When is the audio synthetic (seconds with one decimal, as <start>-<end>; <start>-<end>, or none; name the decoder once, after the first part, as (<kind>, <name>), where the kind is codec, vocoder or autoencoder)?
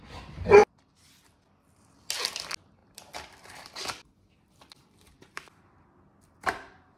2.8-7.0 (vocoder, BigVGAN v2)